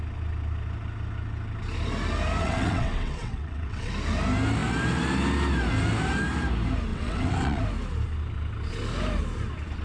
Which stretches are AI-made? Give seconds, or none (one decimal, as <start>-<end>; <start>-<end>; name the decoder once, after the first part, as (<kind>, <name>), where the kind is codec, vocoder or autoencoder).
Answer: 2.4-3.9 (vocoder, WaveNeXt); 6.9-7.6

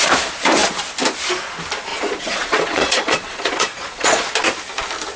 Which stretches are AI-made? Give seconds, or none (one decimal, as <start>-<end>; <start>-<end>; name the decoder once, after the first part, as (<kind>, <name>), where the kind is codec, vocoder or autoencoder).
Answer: 1.9-4.3 (vocoder, Vocos)